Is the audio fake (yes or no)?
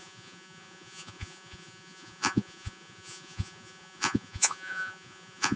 yes